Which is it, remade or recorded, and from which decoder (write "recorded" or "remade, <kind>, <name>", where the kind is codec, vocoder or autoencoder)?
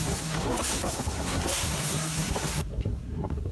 remade, codec, SNAC